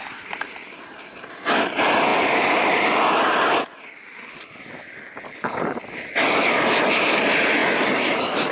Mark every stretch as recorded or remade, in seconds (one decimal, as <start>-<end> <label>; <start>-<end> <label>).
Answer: 0.0-5.3 recorded; 5.3-5.8 remade; 5.8-8.5 recorded